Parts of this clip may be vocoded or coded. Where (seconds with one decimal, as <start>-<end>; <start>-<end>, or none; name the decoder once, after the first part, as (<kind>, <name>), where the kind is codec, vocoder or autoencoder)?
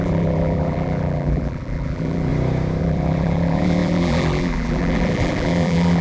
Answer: 0.0-2.3 (vocoder, BigVGAN v2); 2.8-6.0